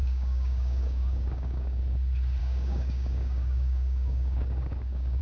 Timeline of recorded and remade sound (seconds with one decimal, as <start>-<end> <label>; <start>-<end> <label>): 0.0-1.8 remade; 1.8-2.4 recorded; 2.4-5.2 remade